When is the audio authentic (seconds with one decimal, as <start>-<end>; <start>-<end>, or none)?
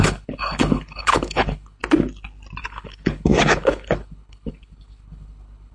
1.8-2.6